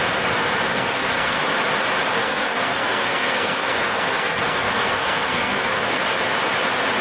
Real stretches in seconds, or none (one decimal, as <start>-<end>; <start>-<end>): 0.0-0.7; 1.4-2.2; 6.0-7.0

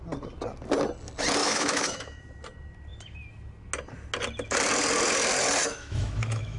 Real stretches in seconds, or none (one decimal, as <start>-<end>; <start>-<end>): 0.0-1.4; 2.2-5.6

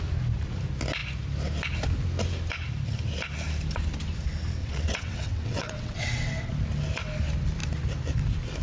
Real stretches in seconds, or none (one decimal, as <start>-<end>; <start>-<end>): 0.0-4.6; 6.5-8.6

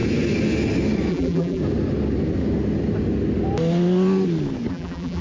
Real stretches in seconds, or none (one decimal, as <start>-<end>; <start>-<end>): 0.0-1.1; 1.6-4.7

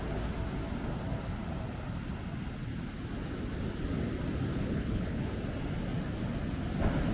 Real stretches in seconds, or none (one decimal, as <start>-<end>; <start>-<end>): 0.0-4.5; 5.3-7.1